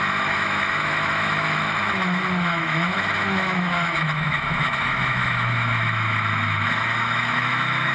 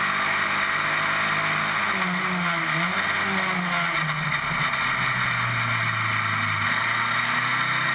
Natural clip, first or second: second